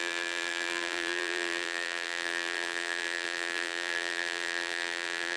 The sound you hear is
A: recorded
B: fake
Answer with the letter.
B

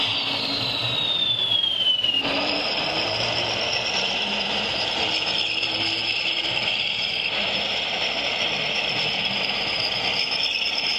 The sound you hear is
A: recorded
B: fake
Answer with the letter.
B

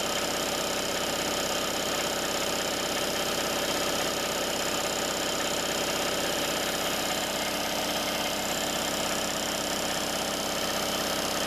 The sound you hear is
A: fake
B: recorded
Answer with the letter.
B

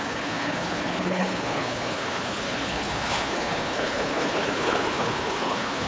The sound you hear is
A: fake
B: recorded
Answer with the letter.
A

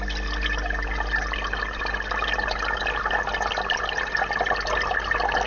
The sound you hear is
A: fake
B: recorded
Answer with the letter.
B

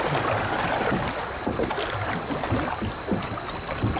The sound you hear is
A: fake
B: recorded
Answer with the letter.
B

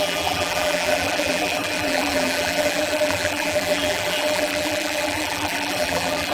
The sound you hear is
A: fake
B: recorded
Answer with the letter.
A